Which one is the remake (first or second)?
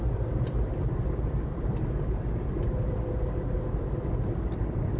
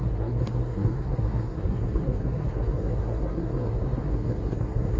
second